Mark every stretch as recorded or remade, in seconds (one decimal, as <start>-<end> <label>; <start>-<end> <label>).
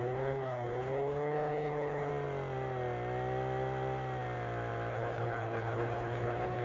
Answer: 0.0-2.1 remade; 2.1-4.9 recorded; 4.9-6.6 remade